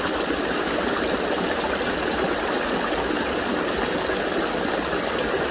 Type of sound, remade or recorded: recorded